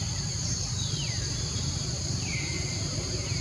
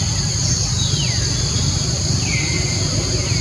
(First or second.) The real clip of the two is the second